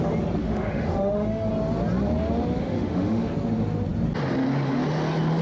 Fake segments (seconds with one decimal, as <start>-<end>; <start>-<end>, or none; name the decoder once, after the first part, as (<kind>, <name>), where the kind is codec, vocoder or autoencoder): 0.4-1.5 (autoencoder, DAC-VAE); 2.6-3.3